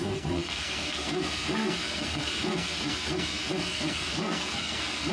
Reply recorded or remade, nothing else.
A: remade